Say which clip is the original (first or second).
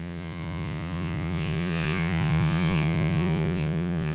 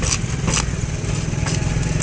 second